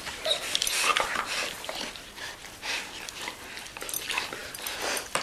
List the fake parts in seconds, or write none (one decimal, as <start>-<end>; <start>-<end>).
none